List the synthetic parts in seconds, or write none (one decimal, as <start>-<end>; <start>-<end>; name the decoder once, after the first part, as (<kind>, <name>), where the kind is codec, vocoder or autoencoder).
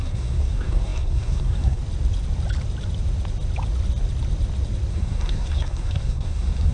0.0-1.8 (codec, SNAC); 4.9-6.7